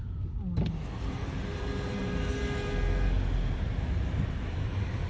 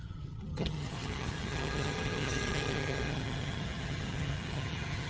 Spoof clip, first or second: second